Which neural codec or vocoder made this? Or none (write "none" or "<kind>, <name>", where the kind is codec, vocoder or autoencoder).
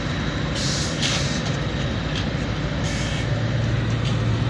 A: none